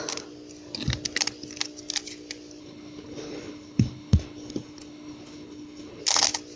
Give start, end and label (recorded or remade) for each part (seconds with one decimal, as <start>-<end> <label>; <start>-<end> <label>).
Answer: 0.0-2.6 recorded; 2.6-6.0 remade; 6.0-6.6 recorded